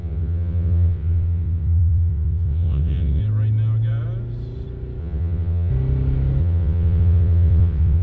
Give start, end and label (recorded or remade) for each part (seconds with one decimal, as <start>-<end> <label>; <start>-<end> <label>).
0.0-3.2 remade; 3.2-5.0 recorded; 5.0-5.7 remade; 5.7-6.4 recorded; 6.4-8.0 remade